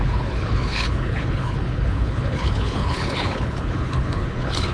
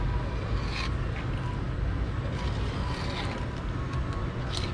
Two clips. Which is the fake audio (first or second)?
first